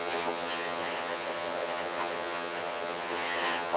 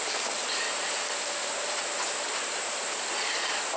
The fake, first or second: first